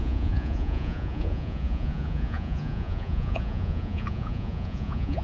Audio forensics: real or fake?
fake